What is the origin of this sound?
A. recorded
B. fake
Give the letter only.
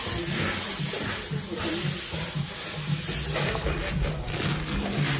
A